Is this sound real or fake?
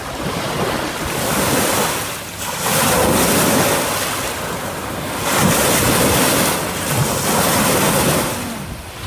real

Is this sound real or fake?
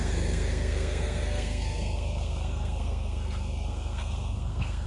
fake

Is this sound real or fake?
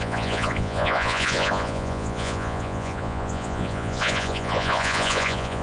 fake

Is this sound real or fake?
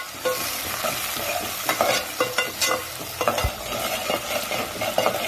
real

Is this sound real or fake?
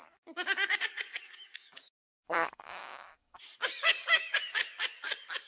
fake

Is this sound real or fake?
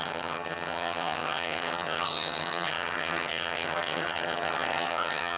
fake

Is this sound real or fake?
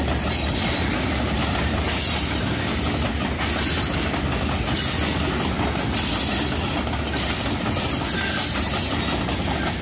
real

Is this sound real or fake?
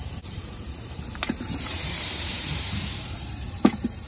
fake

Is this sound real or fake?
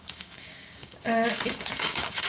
fake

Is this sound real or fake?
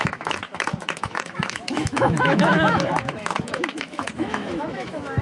fake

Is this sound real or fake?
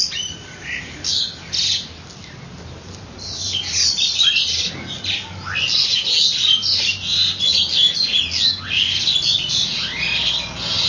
real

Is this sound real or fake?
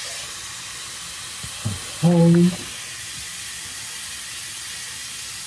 real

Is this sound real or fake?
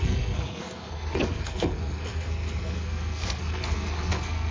fake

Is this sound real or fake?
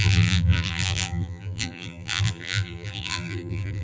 fake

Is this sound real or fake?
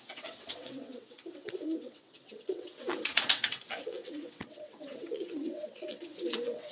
fake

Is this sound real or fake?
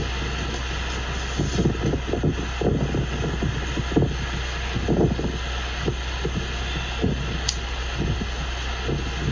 real